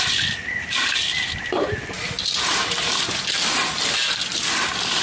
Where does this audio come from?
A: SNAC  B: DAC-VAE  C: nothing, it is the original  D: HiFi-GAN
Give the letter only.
C